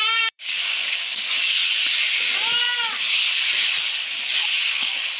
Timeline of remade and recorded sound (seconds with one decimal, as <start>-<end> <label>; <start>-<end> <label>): 0.0-1.6 remade; 1.6-4.7 recorded; 4.7-5.2 remade